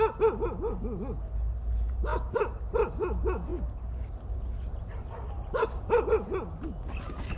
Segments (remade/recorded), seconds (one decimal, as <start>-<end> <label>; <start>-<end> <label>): 0.0-7.4 recorded